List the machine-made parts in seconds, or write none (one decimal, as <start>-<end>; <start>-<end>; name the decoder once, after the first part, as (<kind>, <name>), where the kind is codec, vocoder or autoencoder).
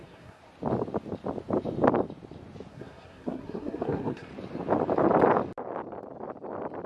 0.0-0.4 (codec, SNAC); 2.7-4.3